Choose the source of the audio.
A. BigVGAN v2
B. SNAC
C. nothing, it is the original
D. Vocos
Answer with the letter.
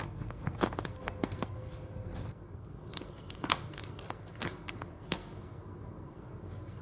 B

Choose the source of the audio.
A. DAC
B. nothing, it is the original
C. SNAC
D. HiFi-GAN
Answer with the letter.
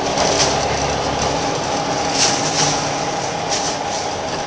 B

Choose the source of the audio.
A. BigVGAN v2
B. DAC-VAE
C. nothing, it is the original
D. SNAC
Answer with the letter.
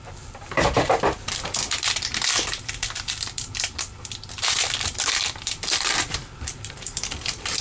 A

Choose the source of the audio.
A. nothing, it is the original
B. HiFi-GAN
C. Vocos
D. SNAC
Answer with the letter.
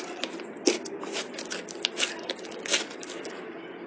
A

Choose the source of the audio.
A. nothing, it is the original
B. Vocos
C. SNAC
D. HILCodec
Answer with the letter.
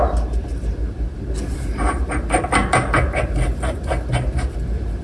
A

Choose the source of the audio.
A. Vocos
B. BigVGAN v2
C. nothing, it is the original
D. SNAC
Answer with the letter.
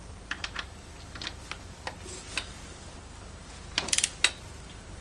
B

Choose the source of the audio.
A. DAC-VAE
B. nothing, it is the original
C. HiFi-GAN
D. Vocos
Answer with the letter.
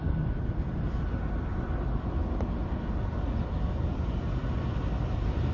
B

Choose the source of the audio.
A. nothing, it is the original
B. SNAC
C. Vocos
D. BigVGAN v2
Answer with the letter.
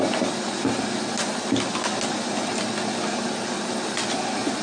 A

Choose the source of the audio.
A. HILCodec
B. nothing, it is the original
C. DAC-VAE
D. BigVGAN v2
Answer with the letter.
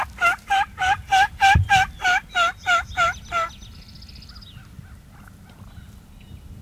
B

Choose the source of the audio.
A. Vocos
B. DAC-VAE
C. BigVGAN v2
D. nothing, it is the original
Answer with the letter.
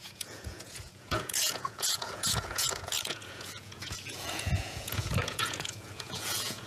A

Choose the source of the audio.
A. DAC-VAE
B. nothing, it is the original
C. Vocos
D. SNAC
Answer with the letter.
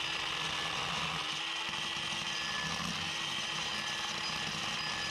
B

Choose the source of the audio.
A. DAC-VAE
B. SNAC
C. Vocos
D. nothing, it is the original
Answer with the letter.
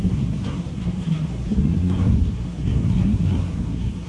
B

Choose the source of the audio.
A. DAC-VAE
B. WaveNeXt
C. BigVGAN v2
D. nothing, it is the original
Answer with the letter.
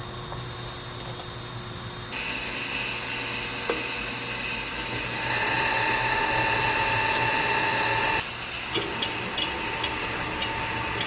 D